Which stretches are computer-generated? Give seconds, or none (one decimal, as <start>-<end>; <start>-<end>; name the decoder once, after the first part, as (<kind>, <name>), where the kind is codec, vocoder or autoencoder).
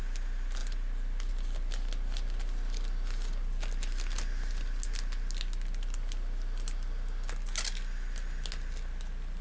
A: none